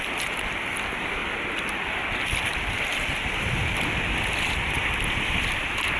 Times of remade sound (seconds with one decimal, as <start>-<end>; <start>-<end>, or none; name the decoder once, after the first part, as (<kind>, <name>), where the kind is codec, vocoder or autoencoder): none